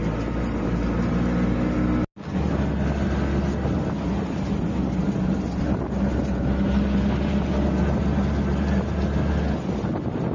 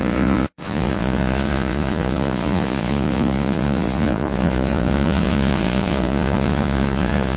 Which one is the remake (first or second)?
second